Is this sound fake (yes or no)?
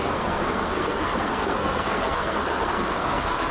yes